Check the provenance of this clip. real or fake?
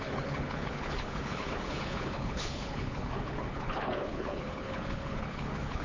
fake